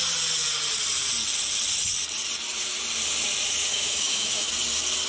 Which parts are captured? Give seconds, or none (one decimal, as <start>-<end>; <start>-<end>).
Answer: 0.0-3.7; 4.5-5.1